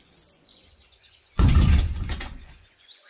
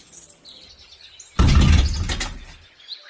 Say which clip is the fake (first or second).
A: first